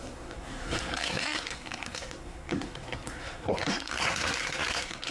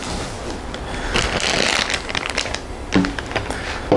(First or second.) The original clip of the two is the second